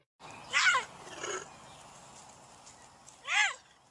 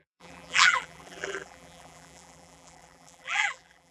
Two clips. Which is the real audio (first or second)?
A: first